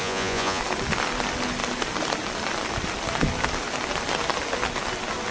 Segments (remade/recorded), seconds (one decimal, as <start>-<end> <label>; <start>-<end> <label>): 0.0-0.6 remade; 0.6-5.3 recorded